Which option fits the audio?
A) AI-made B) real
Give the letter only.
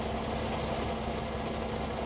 B